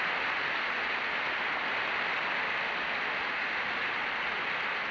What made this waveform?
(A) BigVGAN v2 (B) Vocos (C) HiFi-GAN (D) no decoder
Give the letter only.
D